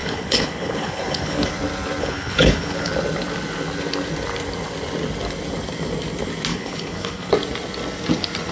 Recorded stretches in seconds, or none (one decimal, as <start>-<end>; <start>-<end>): 1.5-2.0; 2.9-6.5; 7.3-8.5